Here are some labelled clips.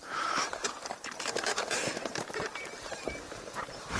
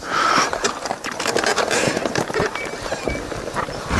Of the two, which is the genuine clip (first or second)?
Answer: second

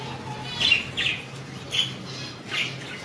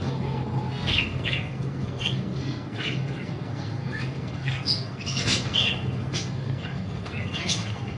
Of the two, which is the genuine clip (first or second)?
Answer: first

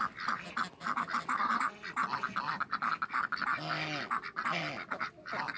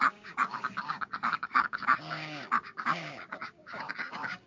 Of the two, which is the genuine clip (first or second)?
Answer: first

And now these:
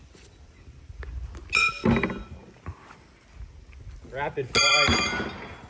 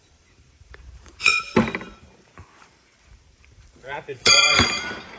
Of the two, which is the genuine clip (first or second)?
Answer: first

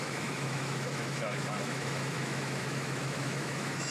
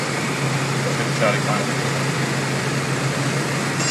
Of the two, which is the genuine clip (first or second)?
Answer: second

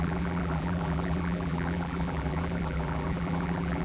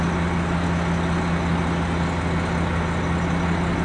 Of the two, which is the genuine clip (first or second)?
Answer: second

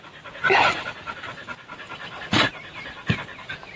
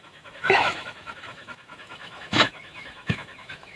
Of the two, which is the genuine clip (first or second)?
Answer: first